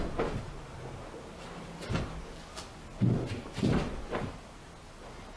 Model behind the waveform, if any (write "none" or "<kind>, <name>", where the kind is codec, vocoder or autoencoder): none